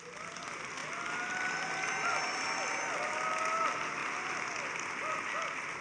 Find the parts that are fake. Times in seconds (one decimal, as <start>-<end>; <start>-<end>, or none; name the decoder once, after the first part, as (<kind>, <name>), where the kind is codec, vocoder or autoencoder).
none